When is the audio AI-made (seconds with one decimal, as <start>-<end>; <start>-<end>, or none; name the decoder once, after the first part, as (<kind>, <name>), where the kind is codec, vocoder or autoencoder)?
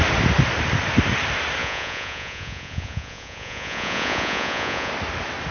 1.6-4.9 (vocoder, Vocos)